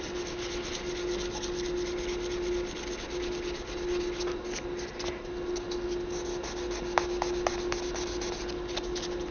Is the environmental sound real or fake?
real